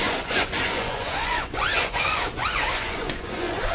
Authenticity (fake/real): fake